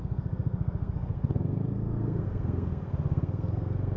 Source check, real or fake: fake